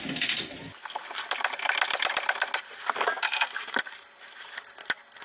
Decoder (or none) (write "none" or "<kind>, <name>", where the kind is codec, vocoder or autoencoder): none